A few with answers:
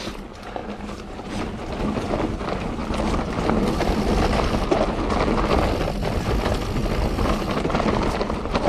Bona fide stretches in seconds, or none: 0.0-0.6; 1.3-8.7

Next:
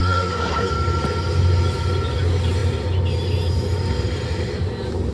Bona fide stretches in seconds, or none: 0.7-5.1

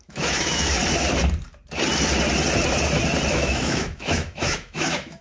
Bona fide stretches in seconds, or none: 0.8-3.3